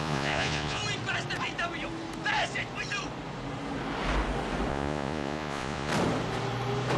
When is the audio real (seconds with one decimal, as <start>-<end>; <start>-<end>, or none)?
0.8-4.7; 5.9-7.0